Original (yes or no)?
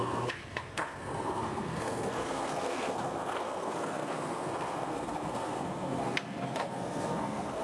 no